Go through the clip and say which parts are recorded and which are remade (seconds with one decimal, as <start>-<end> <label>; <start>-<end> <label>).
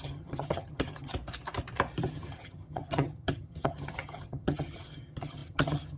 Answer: 0.0-1.1 remade; 1.1-2.1 recorded; 2.1-6.0 remade